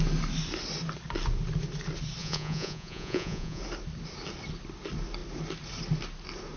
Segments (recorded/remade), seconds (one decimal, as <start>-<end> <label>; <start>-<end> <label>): 0.0-2.2 recorded; 2.2-3.6 remade; 3.6-6.6 recorded